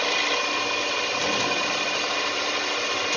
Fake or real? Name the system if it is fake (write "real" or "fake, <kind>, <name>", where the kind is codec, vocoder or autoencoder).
real